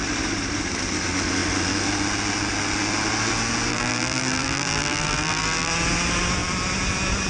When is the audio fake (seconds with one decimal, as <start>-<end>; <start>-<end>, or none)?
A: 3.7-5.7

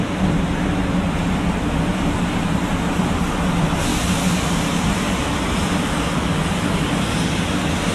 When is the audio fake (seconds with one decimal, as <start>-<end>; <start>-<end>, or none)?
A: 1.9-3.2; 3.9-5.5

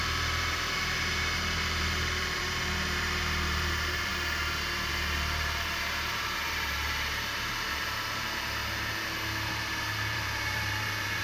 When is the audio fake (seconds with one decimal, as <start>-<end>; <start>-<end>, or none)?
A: 0.0-4.1; 4.9-8.6; 9.5-11.2

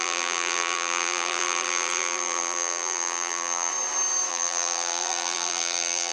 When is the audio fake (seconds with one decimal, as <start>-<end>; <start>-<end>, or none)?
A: 0.0-3.7; 4.3-6.1

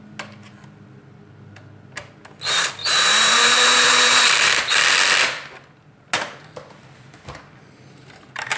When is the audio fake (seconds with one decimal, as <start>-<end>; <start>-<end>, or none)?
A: 2.8-4.6